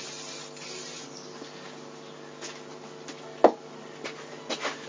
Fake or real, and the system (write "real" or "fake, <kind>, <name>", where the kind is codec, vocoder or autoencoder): real